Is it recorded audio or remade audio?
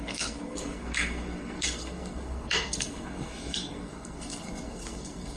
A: remade